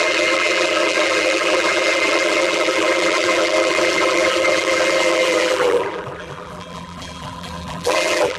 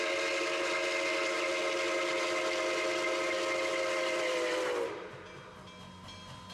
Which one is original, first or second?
second